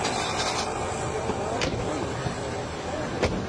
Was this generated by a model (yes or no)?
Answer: no